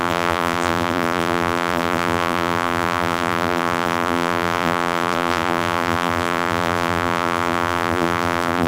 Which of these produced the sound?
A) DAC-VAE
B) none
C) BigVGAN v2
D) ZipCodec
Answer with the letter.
C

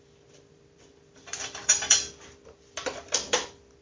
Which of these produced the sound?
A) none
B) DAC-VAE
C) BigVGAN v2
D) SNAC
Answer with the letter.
C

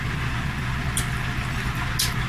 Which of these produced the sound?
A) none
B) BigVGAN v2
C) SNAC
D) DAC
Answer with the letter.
A